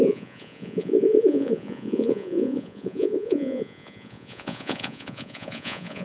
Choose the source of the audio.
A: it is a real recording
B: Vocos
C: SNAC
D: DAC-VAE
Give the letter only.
B